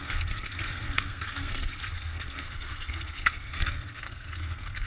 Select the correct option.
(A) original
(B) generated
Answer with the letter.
B